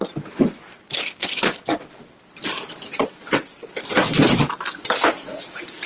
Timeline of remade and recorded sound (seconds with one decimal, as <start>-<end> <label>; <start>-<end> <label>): 0.0-1.2 recorded; 1.2-1.8 remade; 1.8-5.9 recorded